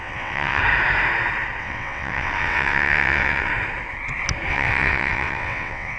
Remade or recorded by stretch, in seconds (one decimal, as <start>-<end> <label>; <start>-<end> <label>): 0.0-0.6 remade; 0.6-1.6 recorded; 1.6-3.5 remade; 3.5-4.5 recorded; 4.5-6.0 remade